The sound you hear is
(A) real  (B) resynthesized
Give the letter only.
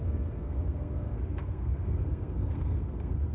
B